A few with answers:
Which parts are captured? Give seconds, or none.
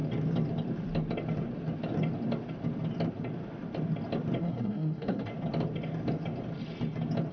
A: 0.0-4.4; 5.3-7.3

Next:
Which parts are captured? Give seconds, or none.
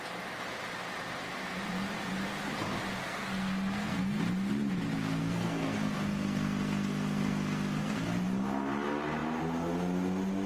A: 0.0-3.0; 4.2-5.2; 8.0-10.5